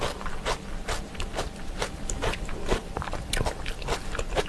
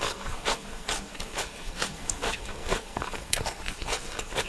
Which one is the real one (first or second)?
first